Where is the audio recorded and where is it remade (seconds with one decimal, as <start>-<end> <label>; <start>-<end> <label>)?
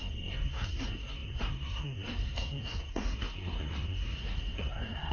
0.0-5.1 remade